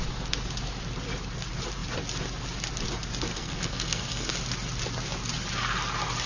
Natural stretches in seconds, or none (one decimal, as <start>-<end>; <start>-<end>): 0.0-3.3; 4.3-6.3

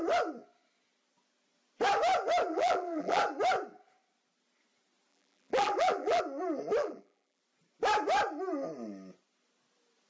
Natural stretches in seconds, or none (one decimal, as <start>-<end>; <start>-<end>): 0.0-2.5; 3.2-5.1; 6.2-6.8; 7.4-10.1

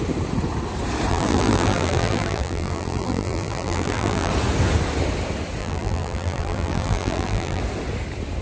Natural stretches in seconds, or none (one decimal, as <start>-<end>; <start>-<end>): 0.0-1.1; 4.3-5.6; 7.6-8.4

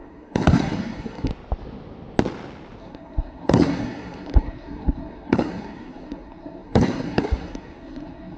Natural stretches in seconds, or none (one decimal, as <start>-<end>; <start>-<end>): 1.3-2.8

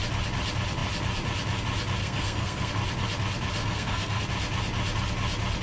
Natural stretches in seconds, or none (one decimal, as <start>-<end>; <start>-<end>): 0.0-2.0; 2.7-3.6; 4.2-5.6